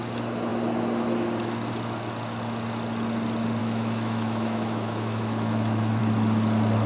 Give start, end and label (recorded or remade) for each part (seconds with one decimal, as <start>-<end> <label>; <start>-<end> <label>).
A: 0.0-3.6 recorded; 3.6-6.0 remade; 6.0-6.9 recorded